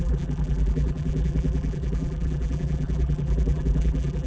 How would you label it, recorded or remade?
remade